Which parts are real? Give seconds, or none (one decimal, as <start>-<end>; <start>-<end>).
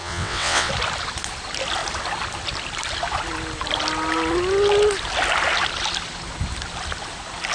0.7-7.5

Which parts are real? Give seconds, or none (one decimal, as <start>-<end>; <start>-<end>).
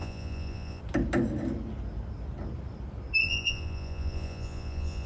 0.8-3.2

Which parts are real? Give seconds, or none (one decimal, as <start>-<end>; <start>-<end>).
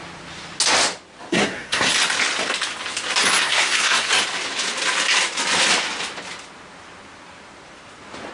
0.0-1.3; 1.9-3.4; 4.1-8.3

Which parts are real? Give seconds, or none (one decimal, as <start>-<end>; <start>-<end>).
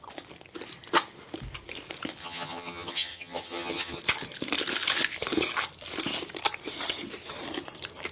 0.0-2.2; 4.0-8.1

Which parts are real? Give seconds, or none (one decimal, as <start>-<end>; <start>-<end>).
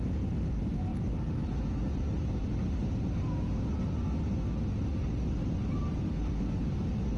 0.0-7.2